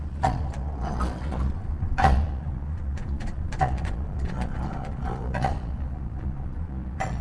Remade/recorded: remade